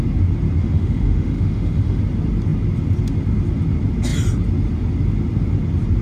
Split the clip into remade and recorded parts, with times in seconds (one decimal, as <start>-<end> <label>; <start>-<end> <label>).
0.0-0.6 recorded; 0.6-2.0 remade; 2.0-6.0 recorded